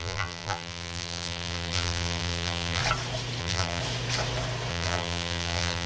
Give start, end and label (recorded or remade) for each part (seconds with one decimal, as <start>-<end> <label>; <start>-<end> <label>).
0.0-2.8 remade; 2.8-3.4 recorded; 3.4-3.8 remade; 3.8-4.7 recorded; 4.7-5.9 remade